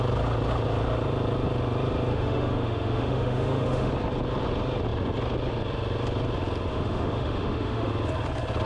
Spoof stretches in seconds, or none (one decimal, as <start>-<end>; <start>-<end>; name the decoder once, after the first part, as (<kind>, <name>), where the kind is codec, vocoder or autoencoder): 2.1-3.9 (autoencoder, DAC-VAE); 6.7-7.9